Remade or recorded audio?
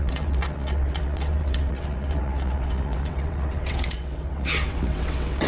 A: remade